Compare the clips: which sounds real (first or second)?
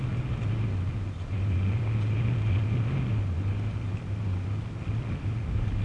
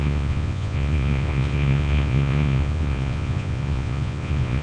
first